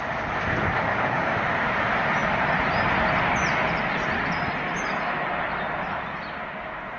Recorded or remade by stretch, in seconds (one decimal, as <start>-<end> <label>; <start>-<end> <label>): 0.0-0.9 recorded; 0.9-1.4 remade; 1.4-7.0 recorded